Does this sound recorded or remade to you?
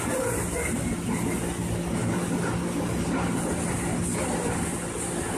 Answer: recorded